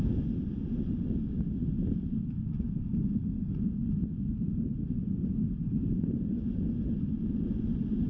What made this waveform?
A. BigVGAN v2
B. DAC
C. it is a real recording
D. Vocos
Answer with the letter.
C